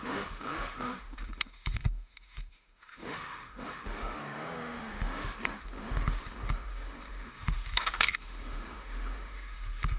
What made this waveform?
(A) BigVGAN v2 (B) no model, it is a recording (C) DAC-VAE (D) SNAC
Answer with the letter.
C